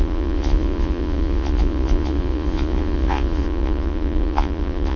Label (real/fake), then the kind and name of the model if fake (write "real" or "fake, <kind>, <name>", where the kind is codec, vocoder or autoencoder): fake, vocoder, Vocos